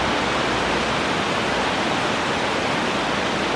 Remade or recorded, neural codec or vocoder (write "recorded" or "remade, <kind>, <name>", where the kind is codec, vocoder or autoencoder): recorded